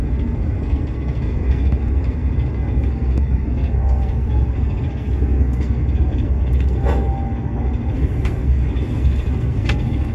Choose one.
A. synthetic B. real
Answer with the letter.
A